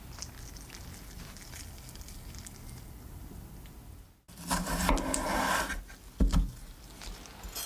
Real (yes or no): yes